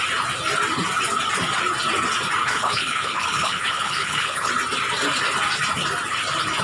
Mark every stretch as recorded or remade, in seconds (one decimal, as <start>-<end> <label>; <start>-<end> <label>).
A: 0.0-2.4 recorded; 2.4-4.5 remade; 4.5-6.6 recorded